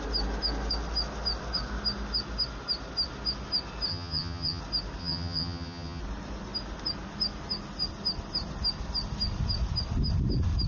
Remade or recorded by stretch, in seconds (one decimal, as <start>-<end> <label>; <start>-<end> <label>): 0.0-3.9 recorded; 3.9-4.6 remade; 4.6-5.0 recorded; 5.0-6.0 remade; 6.0-10.7 recorded